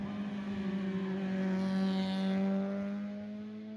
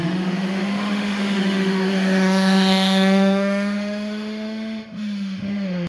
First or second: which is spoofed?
second